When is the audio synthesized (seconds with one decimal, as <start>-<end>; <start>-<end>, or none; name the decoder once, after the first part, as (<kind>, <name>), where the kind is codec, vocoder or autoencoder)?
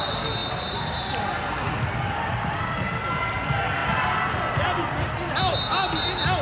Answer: none